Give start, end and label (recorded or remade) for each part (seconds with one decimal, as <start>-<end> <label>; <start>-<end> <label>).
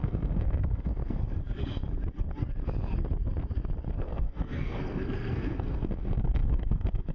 0.0-1.4 remade; 1.4-3.9 recorded; 3.9-7.1 remade